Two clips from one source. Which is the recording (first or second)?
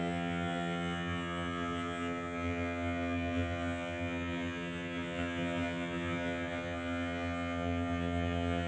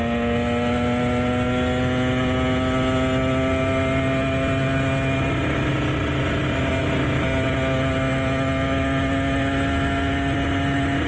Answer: second